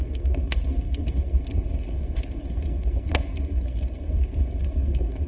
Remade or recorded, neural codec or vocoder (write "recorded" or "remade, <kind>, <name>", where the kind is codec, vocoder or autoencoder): remade, codec, SNAC